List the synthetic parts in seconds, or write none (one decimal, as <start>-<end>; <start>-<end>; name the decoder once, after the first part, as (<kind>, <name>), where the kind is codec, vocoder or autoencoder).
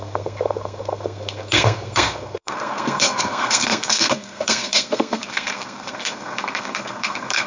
0.0-7.5 (codec, SNAC)